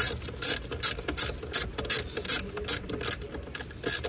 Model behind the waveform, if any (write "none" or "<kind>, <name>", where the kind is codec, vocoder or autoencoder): none